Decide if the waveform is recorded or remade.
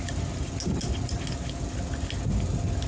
recorded